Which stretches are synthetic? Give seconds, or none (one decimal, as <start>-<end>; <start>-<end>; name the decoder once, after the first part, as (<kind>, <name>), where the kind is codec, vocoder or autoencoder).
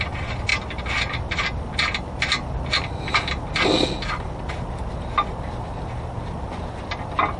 none